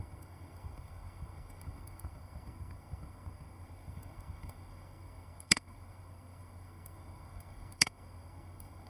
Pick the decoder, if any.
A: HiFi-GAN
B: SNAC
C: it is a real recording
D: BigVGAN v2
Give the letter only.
B